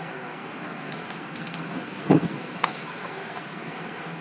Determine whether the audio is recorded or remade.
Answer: remade